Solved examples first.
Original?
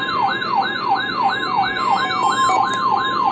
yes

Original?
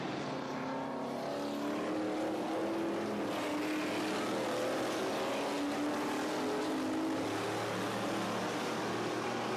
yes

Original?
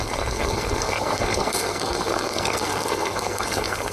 no